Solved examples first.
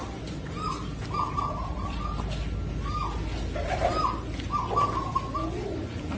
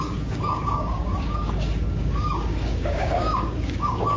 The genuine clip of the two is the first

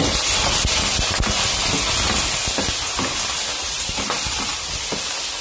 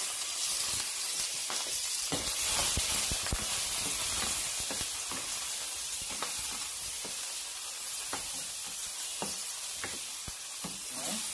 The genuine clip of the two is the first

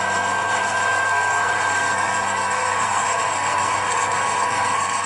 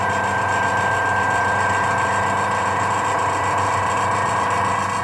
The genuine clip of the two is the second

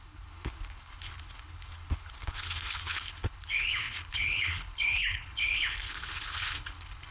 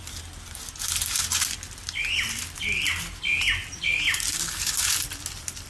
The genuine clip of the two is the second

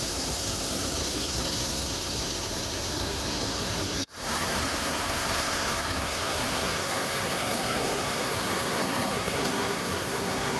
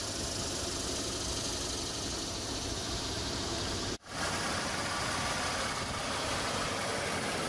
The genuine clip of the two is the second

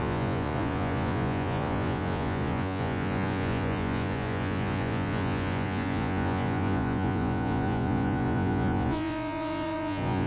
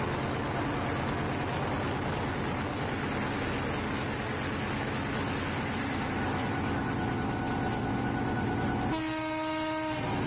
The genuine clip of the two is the second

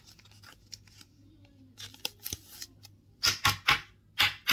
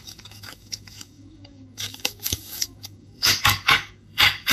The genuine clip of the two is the first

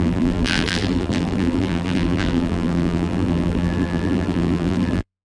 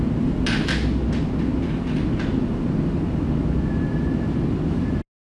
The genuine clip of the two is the second